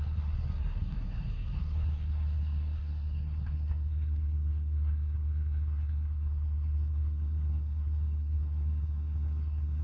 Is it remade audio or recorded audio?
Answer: remade